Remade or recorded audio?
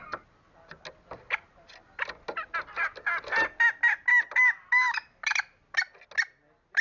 recorded